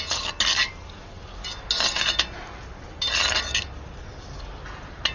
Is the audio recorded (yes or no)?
yes